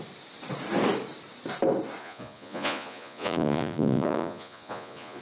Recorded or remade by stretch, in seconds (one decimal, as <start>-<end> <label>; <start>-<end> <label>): 0.0-2.0 recorded; 2.0-5.2 remade